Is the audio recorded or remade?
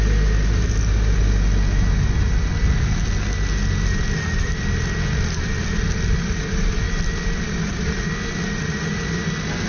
recorded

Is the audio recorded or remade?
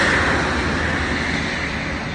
recorded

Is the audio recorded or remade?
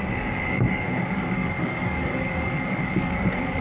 remade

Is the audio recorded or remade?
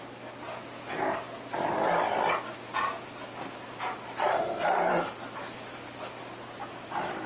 recorded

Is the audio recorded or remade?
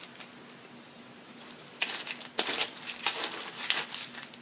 recorded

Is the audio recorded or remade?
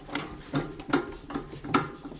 recorded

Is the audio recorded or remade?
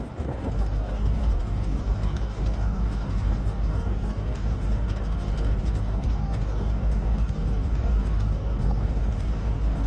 remade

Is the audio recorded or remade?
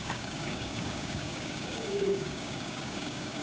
remade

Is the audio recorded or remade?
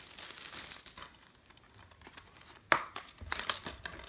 recorded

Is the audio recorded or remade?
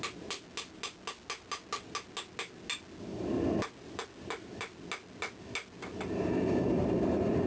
recorded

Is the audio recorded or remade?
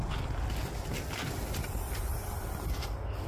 recorded